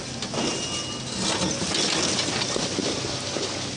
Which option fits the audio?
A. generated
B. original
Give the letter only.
B